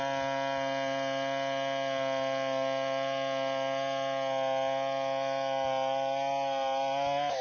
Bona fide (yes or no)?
yes